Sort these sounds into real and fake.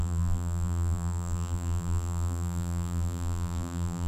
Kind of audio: fake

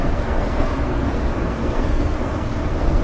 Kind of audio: fake